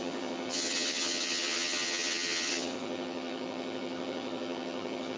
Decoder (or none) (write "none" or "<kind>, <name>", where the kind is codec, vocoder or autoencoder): vocoder, HiFi-GAN